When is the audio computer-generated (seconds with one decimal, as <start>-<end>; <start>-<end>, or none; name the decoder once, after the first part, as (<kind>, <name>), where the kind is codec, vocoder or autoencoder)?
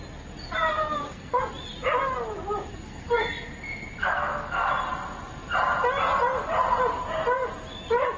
0.8-1.4 (codec, SNAC); 2.7-3.2; 4.0-4.7